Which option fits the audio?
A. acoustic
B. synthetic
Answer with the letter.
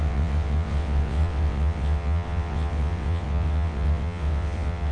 B